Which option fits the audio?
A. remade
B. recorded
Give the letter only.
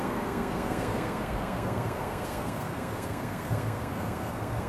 A